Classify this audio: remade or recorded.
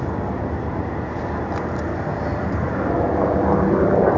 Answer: recorded